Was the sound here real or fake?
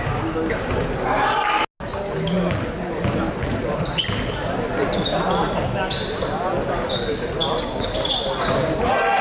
real